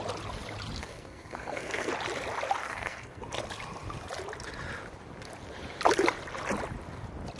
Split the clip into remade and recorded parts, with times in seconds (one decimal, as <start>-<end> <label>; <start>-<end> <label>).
0.0-0.8 recorded; 0.8-1.9 remade; 1.9-2.6 recorded; 2.6-3.2 remade; 3.2-7.4 recorded